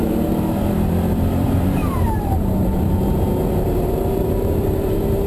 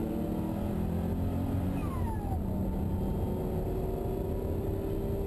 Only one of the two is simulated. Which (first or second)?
first